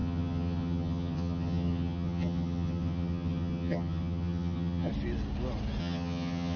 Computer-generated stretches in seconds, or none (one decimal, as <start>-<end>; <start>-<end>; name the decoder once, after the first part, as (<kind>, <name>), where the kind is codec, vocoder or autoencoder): 0.0-4.9 (vocoder, HiFi-GAN); 5.8-6.6